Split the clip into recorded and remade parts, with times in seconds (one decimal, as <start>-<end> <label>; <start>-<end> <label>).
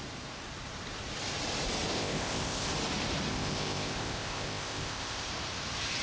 0.0-1.9 recorded; 1.9-2.7 remade; 2.7-3.3 recorded; 3.3-5.3 remade; 5.3-6.0 recorded